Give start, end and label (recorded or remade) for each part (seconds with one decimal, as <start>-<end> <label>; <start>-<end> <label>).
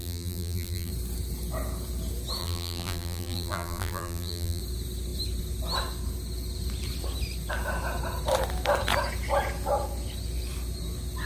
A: 0.0-0.9 remade; 0.9-2.4 recorded; 2.4-4.6 remade; 4.6-11.3 recorded